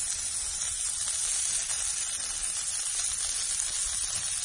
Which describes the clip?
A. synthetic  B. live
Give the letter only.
B